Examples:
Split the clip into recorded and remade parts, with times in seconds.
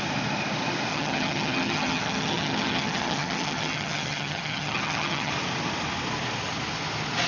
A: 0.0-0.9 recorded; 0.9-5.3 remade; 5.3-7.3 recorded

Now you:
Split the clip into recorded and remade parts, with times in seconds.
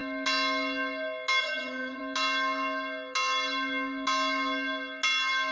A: 0.0-1.4 recorded; 1.4-2.0 remade; 2.0-5.5 recorded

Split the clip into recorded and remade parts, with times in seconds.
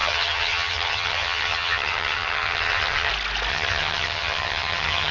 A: 0.0-3.1 remade; 3.1-3.5 recorded; 3.5-5.1 remade